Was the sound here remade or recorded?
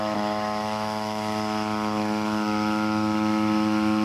remade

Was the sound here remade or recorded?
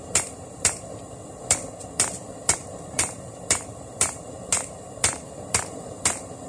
remade